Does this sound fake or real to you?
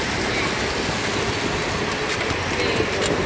real